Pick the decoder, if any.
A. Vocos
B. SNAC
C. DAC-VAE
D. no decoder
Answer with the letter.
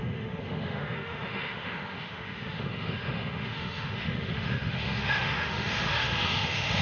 C